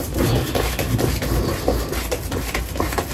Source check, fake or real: real